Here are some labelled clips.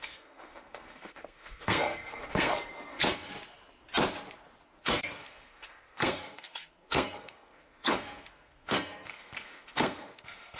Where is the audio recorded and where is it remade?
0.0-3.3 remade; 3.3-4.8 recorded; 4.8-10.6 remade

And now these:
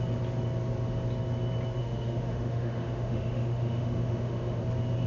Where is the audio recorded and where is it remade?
0.0-1.8 recorded; 1.8-4.6 remade; 4.6-5.1 recorded

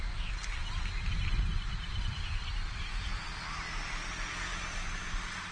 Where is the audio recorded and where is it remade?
0.0-1.9 recorded; 1.9-2.5 remade; 2.5-4.5 recorded; 4.5-5.5 remade